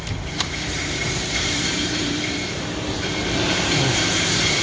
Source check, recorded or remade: remade